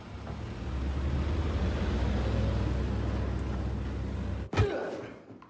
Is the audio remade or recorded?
recorded